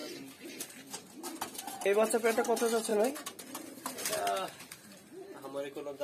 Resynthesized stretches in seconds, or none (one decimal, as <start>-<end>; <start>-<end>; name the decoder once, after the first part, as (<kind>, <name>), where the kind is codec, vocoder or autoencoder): none